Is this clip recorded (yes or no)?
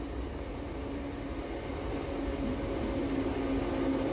yes